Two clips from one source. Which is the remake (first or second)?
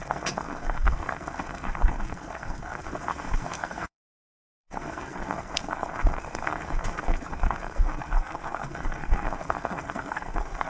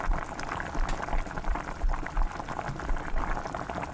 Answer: first